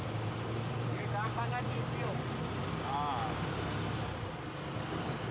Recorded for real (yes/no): yes